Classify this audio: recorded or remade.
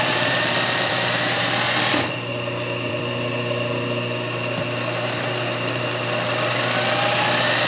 remade